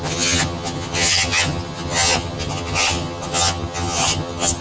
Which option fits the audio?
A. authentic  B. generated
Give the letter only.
B